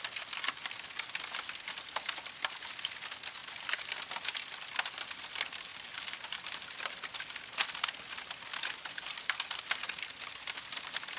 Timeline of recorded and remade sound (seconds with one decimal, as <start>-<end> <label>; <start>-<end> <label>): 0.0-11.2 recorded